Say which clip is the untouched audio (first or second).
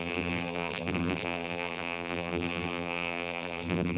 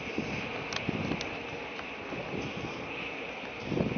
second